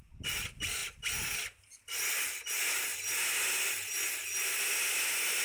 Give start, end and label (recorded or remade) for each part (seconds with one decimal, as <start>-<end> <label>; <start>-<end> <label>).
0.0-5.4 recorded